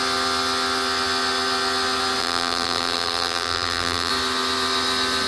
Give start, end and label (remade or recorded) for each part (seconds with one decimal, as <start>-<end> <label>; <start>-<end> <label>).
0.0-2.2 recorded; 2.2-4.1 remade; 4.1-5.3 recorded